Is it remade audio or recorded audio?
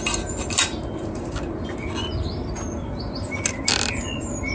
recorded